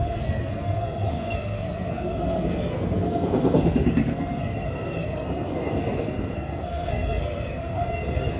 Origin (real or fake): fake